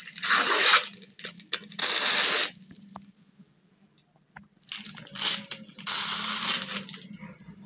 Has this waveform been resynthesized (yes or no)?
no